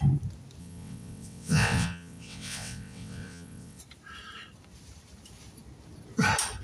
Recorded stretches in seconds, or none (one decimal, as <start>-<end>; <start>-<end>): 0.0-0.6; 3.8-6.6